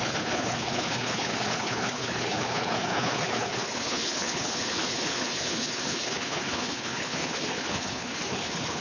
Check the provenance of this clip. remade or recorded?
remade